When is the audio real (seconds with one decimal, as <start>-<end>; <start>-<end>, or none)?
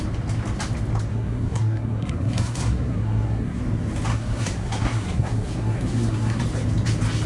0.0-1.1; 3.6-4.1; 6.4-7.3